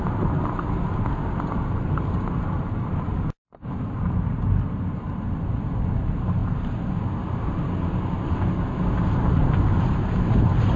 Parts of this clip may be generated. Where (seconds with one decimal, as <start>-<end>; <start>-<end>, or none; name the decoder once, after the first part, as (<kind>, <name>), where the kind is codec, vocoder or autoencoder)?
none